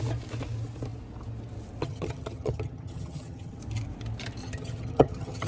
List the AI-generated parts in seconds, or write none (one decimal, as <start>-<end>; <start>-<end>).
1.8-3.6; 4.4-5.5

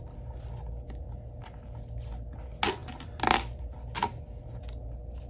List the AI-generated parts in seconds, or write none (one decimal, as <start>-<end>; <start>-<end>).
none

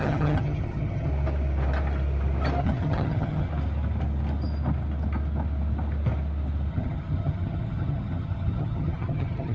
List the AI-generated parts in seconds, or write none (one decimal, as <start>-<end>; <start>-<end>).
0.0-1.1; 2.6-3.5; 6.7-9.5

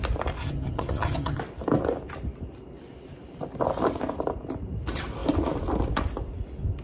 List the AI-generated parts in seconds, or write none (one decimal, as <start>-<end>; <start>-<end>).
0.4-1.4

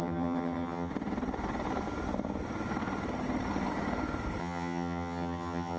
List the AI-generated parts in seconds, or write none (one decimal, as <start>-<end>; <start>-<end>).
0.0-0.9; 4.4-5.8